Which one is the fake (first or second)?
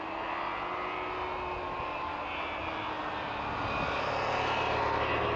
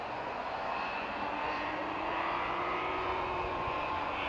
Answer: second